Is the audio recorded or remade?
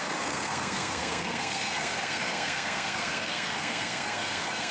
remade